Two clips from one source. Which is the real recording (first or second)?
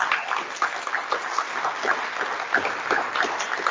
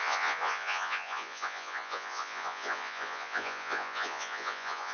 first